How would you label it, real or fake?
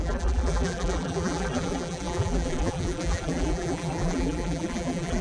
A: fake